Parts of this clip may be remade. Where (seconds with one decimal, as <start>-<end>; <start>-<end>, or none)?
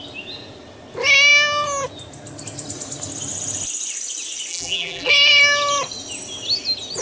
4.5-5.1